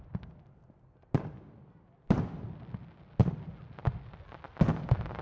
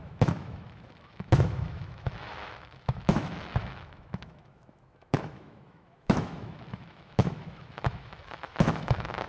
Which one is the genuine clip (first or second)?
first